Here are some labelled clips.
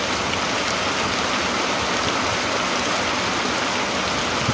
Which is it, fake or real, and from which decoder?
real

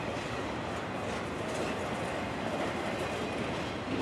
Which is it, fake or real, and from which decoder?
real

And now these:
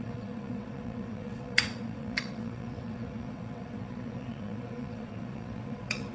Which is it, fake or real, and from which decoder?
fake, vocoder, WaveNeXt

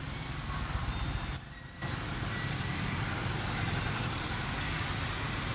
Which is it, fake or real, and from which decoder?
real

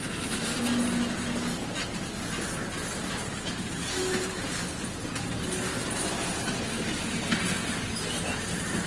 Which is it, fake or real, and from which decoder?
real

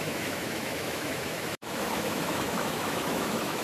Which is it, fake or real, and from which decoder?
fake, autoencoder, DAC-VAE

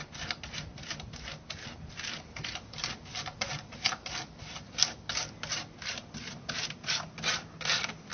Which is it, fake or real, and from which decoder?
real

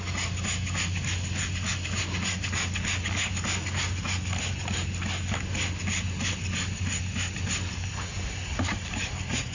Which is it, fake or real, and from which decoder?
real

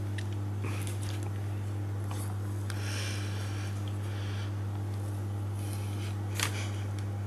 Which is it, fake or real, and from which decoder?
real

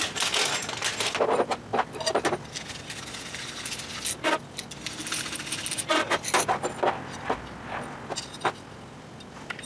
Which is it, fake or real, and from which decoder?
real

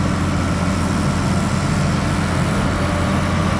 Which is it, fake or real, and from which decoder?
real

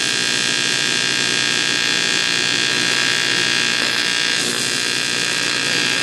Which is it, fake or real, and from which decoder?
real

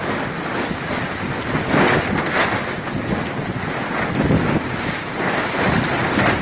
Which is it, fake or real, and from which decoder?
real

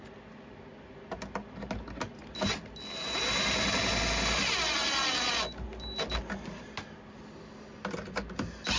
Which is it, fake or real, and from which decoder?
real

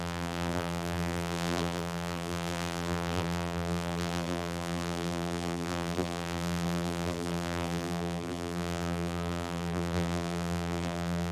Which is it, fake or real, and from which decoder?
fake, vocoder, BigVGAN v2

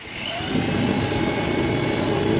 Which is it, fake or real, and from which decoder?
real